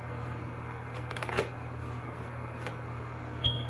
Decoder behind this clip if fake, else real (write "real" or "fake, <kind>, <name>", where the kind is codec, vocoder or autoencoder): fake, codec, SNAC